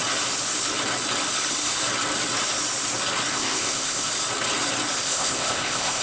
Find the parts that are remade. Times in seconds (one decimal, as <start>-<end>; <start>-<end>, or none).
3.3-4.1; 5.0-6.0